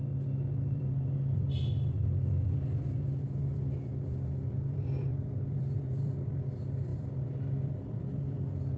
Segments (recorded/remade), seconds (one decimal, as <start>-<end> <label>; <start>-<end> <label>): 0.0-8.8 remade